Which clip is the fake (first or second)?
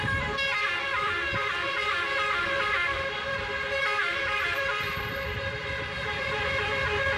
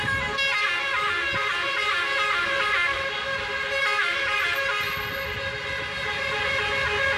first